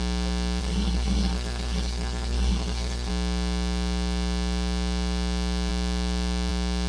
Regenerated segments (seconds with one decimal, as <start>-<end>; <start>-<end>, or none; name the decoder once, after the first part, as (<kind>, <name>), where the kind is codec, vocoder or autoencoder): 0.6-3.1 (codec, SNAC)